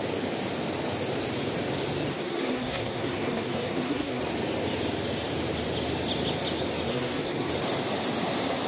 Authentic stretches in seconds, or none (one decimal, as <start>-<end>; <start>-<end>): 0.0-2.1; 4.2-6.9; 7.5-8.7